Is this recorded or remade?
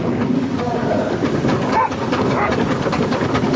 remade